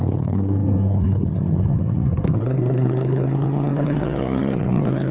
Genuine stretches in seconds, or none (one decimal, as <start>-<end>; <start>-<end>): none